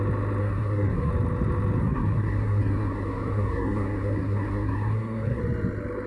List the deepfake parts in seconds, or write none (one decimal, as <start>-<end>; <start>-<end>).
0.4-1.1; 1.8-5.4